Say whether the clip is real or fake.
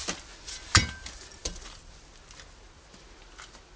real